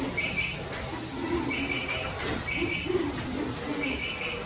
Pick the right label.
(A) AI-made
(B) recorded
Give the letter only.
B